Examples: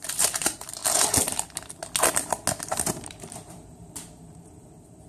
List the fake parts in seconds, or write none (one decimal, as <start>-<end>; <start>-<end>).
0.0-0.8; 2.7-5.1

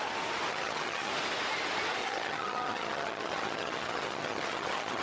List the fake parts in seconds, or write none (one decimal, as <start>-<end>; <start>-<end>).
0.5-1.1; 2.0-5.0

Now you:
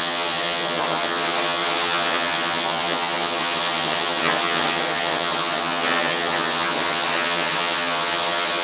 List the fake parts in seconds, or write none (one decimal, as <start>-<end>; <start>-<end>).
0.0-8.6

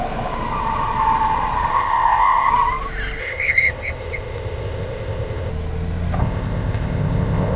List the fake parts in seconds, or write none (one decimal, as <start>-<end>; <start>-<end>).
1.7-2.5; 3.2-5.5; 6.2-7.6

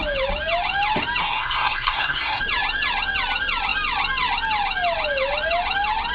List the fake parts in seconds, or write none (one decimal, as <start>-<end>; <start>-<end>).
1.2-2.4